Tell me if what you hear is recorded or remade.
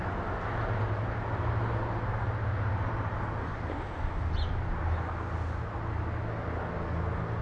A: recorded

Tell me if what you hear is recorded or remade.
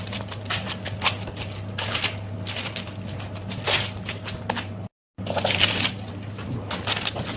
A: recorded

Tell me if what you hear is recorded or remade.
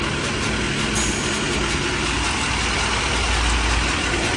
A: recorded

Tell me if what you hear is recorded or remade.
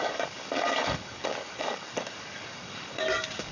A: remade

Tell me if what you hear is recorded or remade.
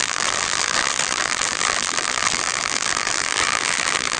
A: remade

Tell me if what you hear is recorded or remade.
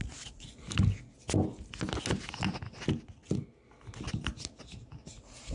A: recorded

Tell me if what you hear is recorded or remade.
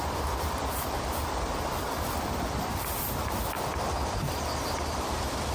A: remade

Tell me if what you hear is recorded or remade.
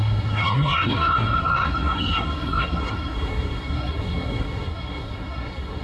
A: remade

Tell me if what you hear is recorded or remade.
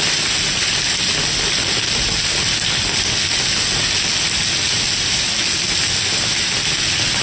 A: recorded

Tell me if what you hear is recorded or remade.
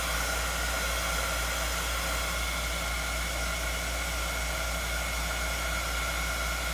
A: recorded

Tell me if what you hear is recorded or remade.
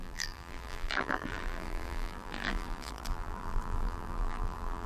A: remade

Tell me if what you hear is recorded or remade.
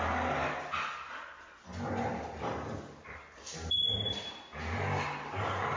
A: recorded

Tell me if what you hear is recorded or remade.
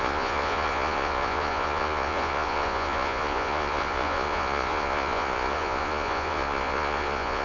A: remade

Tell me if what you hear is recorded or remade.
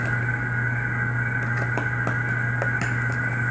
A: recorded